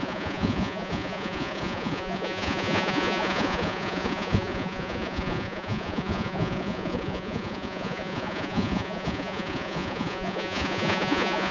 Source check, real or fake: fake